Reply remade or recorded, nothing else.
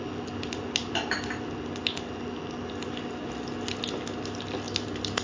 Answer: recorded